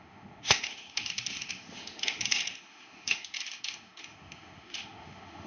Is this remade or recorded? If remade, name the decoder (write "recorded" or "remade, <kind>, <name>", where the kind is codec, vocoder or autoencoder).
remade, autoencoder, DAC-VAE